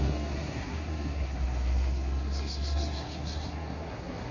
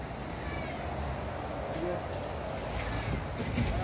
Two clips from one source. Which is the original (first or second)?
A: second